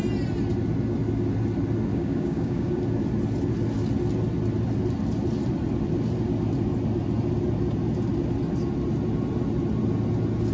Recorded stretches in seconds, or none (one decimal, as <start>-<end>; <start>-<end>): 0.0-1.9; 2.8-10.5